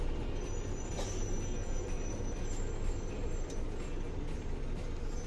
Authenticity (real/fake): real